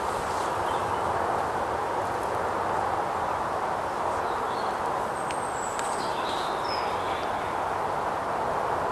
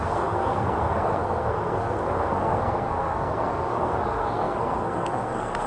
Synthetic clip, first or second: second